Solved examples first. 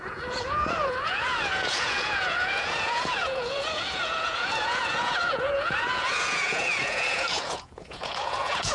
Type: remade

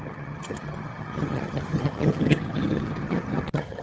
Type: remade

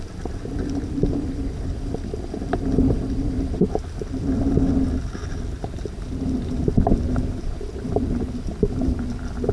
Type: recorded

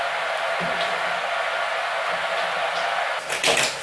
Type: recorded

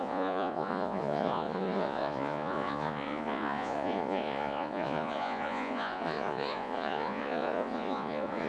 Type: remade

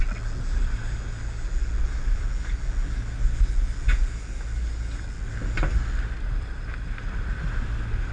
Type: recorded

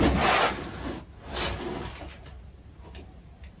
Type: recorded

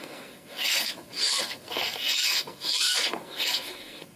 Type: remade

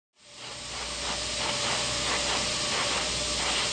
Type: recorded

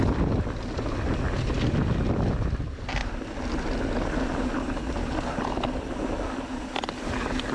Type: recorded